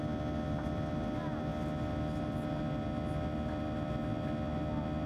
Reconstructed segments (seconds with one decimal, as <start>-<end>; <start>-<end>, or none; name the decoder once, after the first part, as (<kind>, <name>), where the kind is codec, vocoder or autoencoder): none